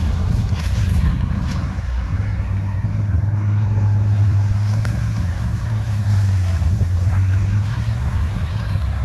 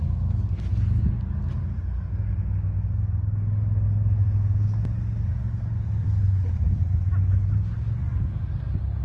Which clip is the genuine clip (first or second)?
second